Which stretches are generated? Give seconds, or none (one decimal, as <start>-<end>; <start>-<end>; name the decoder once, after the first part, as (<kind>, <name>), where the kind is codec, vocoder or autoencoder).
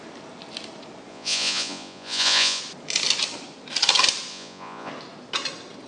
1.1-2.6 (vocoder, Vocos); 4.3-4.9